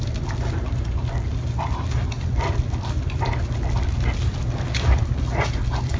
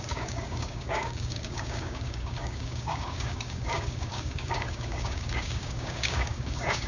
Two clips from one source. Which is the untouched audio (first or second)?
first